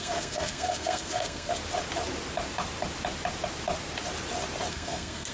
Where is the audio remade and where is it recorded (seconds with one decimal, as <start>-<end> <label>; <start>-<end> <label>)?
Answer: 0.0-1.5 remade; 1.5-4.7 recorded; 4.7-5.3 remade